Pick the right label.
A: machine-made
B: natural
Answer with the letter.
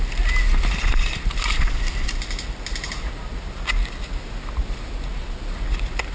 B